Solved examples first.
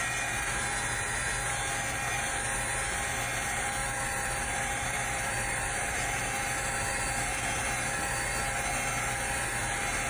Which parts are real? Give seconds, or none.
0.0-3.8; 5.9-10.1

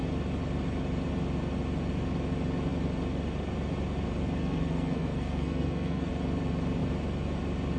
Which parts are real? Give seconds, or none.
0.0-4.4; 6.1-7.8

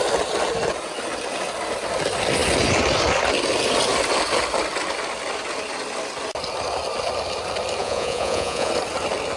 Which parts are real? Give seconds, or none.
0.0-7.8; 8.7-9.4

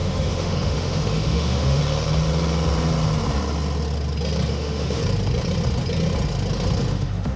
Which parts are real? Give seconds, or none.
1.8-4.5; 5.0-6.9

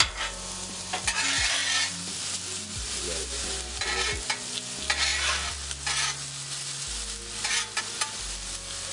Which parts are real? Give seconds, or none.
1.6-4.6; 5.1-7.8

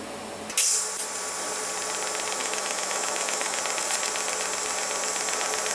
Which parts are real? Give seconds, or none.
0.0-2.4; 3.6-5.7

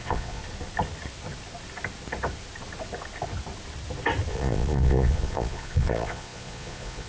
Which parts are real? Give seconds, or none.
0.4-4.3